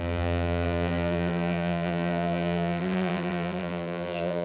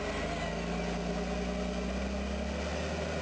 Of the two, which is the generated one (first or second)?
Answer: first